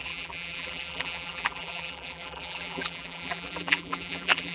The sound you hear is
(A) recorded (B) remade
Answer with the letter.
B